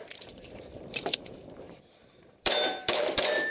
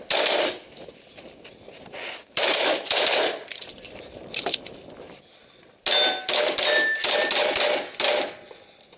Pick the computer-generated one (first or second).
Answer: first